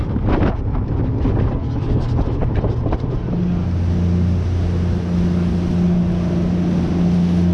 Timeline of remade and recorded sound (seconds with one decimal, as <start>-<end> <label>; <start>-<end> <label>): 0.0-1.6 recorded; 1.6-2.1 remade; 2.1-7.5 recorded